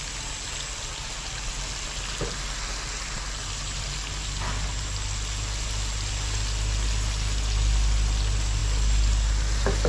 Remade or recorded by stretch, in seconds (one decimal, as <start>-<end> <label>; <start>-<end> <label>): 0.0-9.9 recorded